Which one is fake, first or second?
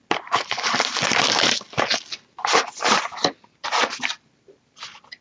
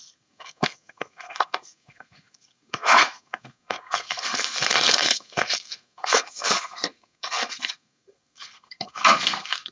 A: second